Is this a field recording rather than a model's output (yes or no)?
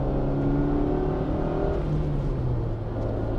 yes